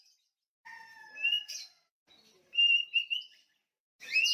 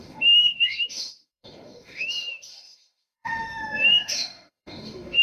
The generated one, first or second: second